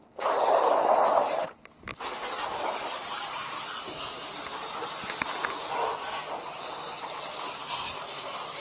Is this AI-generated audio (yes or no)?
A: no